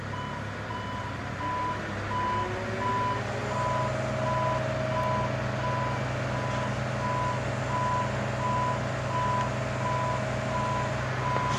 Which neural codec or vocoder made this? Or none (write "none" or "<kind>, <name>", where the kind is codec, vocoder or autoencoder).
none